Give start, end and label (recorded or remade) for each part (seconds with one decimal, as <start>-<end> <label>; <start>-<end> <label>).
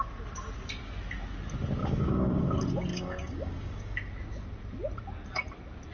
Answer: 0.0-1.8 recorded; 1.8-2.5 remade; 2.5-2.9 recorded; 2.9-4.1 remade; 4.1-5.9 recorded